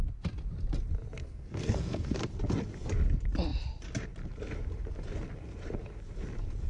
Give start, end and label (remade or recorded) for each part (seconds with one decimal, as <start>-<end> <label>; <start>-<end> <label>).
0.0-1.2 recorded; 1.2-2.2 remade; 2.2-6.7 recorded